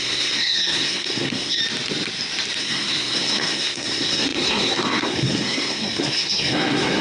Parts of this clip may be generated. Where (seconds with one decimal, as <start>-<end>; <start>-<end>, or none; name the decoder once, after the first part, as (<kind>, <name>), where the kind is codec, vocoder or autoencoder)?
0.0-1.6 (codec, SNAC); 2.6-7.0